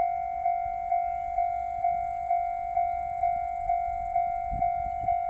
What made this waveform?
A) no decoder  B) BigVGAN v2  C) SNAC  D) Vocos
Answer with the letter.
A